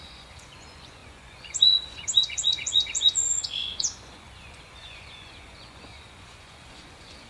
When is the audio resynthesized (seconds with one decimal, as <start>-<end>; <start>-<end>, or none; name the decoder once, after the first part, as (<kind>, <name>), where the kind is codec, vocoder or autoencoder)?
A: 0.0-7.3 (vocoder, Vocos)